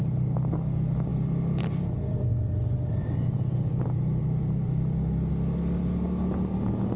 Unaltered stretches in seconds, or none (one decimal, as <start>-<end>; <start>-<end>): 0.0-1.1; 5.3-7.0